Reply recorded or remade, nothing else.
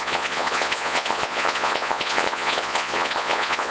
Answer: remade